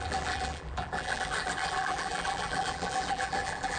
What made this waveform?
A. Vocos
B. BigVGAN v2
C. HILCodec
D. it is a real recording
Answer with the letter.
B